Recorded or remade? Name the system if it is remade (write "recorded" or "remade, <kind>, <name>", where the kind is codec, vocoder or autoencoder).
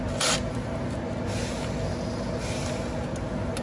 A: recorded